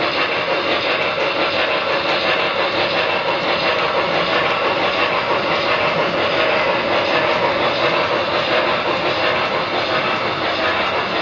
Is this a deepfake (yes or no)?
no